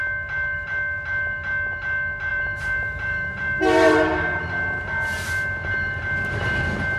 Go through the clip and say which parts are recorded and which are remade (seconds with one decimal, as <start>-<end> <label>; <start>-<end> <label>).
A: 0.0-2.3 recorded; 2.3-4.4 remade; 4.4-7.0 recorded